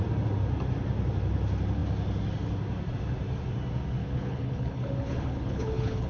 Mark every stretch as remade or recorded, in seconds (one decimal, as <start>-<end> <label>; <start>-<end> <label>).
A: 0.0-4.0 recorded; 4.0-6.1 remade